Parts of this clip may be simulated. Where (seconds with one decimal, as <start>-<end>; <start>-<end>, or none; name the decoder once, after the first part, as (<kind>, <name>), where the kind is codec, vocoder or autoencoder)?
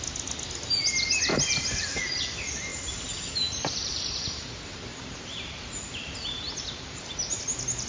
1.3-2.0 (vocoder, BigVGAN v2); 2.7-7.4